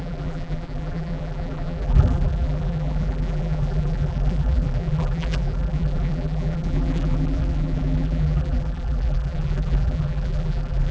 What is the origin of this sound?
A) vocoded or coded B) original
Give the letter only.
A